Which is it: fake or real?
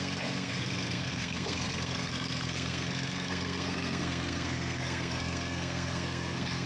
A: fake